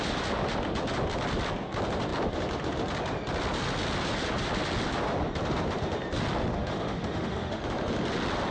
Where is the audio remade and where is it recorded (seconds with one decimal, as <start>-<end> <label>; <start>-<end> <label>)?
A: 0.0-6.5 recorded; 6.5-7.6 remade; 7.6-8.5 recorded

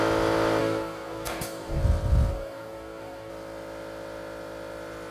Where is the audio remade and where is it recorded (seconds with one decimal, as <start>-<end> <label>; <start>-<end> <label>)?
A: 0.0-0.6 recorded; 0.6-1.8 remade; 1.8-2.3 recorded; 2.3-3.3 remade; 3.3-5.1 recorded

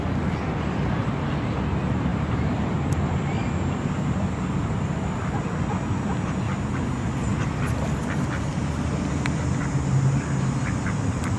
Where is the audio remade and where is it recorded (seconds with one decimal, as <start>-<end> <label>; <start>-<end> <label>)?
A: 0.0-2.1 recorded; 2.1-3.2 remade; 3.2-7.3 recorded; 7.3-9.1 remade; 9.1-11.4 recorded

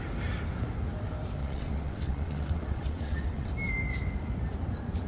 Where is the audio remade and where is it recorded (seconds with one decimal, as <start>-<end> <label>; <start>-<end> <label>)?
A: 0.0-1.4 recorded; 1.4-3.5 remade; 3.5-5.1 recorded

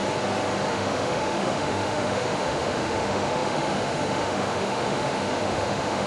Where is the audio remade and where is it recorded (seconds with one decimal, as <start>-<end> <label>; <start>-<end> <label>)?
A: 0.0-0.7 recorded; 0.7-6.1 remade

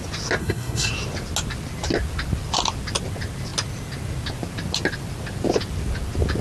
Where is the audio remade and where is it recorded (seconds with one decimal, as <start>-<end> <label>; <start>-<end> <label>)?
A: 0.0-0.4 recorded; 0.4-0.9 remade; 0.9-6.4 recorded